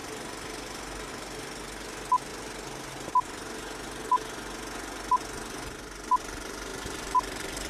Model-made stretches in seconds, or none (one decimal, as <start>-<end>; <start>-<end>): 6.7-7.7